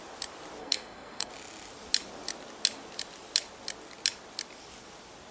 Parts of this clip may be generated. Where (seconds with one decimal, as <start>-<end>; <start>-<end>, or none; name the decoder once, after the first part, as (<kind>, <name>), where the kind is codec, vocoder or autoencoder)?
0.6-1.3 (codec, SNAC)